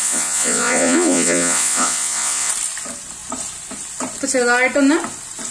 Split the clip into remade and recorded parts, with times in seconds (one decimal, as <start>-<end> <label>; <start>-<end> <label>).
0.0-2.5 remade; 2.5-5.5 recorded